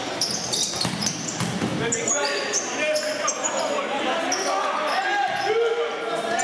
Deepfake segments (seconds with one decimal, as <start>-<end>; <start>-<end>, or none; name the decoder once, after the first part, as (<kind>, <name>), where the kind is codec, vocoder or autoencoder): none